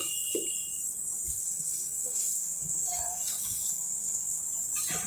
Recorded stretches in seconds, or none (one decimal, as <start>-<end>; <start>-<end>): 0.0-1.3; 4.4-5.1